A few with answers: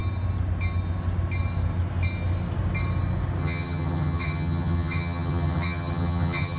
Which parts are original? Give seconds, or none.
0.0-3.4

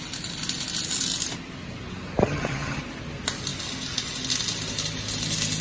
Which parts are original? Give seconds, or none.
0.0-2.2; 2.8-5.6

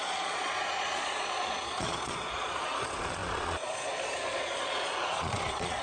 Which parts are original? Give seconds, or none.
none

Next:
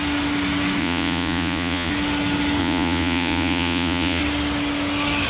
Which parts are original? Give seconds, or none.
0.0-0.8; 1.9-2.6; 4.2-5.3

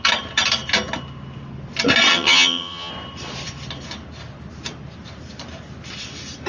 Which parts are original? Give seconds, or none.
0.0-2.1; 2.9-6.5

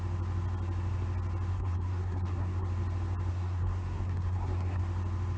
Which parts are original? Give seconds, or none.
0.0-1.5; 2.7-3.3; 4.8-5.4